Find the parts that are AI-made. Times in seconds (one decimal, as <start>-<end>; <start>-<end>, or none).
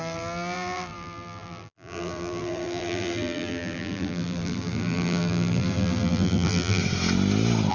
0.0-6.8